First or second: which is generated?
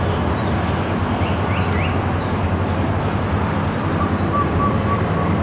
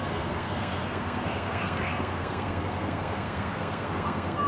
second